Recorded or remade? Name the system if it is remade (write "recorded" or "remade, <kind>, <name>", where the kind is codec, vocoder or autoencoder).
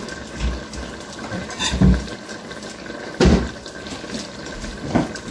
recorded